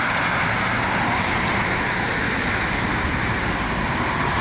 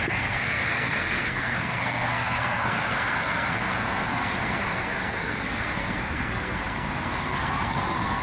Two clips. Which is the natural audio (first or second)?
first